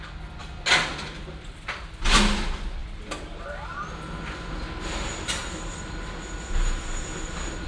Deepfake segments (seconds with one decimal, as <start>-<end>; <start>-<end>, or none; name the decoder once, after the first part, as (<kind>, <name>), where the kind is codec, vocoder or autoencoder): none

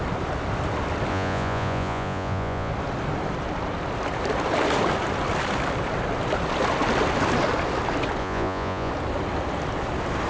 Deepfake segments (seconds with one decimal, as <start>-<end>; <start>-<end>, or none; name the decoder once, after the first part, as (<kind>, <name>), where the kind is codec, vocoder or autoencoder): 1.1-2.7 (vocoder, Vocos); 8.2-8.9